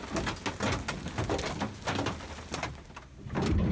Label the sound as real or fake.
real